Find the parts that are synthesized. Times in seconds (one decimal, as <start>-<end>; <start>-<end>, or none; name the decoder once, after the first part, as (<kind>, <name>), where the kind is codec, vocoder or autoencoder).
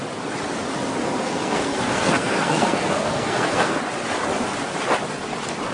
1.0-3.8 (codec, SNAC)